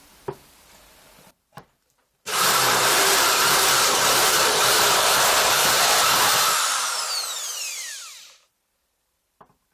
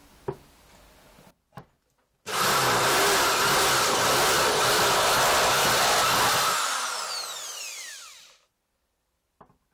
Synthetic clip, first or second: first